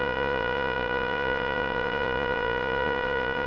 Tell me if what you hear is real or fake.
fake